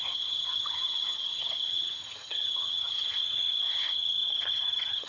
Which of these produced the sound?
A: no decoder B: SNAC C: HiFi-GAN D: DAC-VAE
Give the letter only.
C